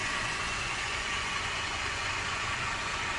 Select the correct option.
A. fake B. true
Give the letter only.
A